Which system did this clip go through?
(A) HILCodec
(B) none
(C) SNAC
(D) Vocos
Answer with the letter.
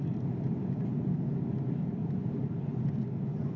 B